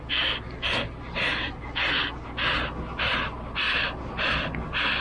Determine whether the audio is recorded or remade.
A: recorded